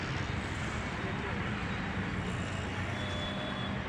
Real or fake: real